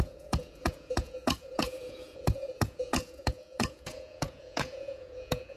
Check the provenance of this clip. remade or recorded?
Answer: remade